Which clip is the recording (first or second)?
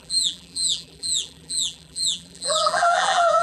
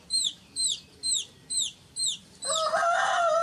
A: second